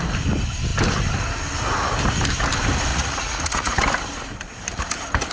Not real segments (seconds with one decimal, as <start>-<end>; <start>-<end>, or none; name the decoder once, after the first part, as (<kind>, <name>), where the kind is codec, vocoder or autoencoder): 2.9-3.8 (vocoder, Vocos)